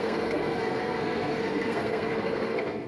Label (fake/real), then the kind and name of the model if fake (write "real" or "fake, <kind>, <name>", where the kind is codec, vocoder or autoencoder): fake, codec, SNAC